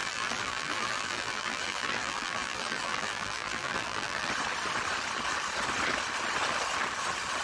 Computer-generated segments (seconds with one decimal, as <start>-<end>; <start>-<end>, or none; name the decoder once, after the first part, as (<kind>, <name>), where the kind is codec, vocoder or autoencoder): 0.0-4.3 (vocoder, BigVGAN v2)